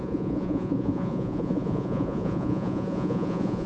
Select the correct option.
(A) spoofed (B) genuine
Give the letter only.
A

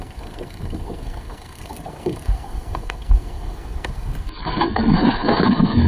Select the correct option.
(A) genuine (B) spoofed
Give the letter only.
B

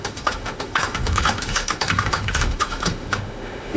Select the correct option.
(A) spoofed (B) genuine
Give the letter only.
A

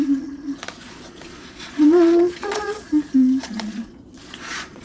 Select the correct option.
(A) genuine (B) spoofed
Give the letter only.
B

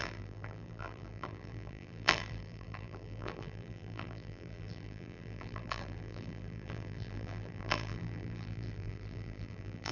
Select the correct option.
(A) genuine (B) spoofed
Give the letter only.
B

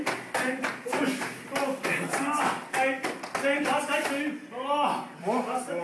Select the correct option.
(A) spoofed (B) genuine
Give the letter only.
B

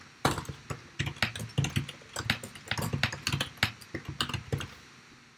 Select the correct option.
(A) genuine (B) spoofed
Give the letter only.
A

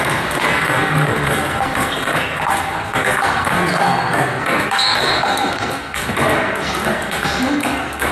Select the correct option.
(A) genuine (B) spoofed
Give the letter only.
B